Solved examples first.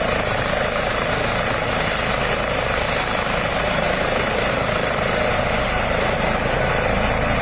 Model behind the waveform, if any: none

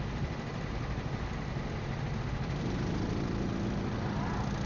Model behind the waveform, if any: none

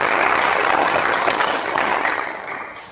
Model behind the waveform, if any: vocoder, HiFi-GAN